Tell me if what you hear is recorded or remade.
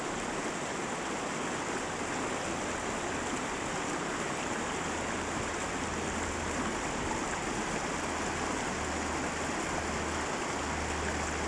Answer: recorded